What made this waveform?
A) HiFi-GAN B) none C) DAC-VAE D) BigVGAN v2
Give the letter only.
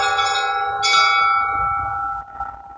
B